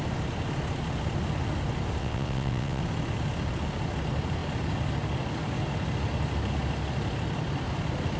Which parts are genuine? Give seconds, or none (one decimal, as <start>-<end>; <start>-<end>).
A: 0.0-2.0; 2.8-8.2